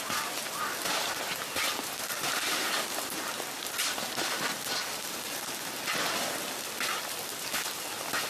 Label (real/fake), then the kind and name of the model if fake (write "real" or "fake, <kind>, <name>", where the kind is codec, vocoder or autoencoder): real